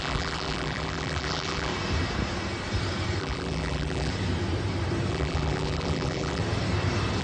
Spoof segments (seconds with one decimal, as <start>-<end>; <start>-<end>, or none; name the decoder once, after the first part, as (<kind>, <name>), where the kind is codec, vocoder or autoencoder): 0.0-1.7 (vocoder, BigVGAN v2); 3.2-4.1; 5.1-6.4